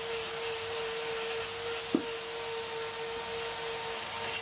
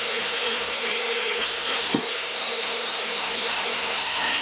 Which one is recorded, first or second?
first